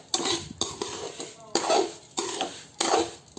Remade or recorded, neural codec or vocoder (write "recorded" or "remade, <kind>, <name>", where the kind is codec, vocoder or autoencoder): recorded